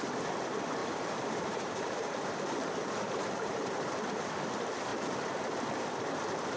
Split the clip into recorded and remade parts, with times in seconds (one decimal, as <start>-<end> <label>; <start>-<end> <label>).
0.0-0.8 recorded; 0.8-4.3 remade; 4.3-6.6 recorded